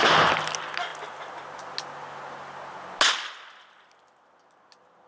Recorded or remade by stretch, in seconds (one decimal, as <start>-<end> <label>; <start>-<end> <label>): 0.0-5.1 recorded